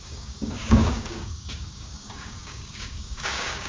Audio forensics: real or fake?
fake